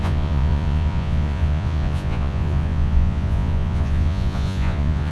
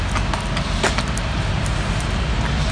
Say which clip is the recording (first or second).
second